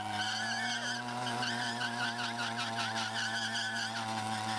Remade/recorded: recorded